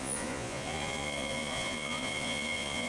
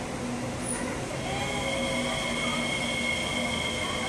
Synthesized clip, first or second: first